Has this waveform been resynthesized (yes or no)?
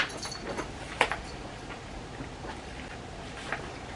no